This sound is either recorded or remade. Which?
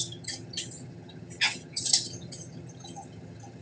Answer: remade